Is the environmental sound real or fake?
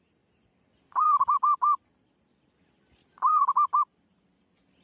fake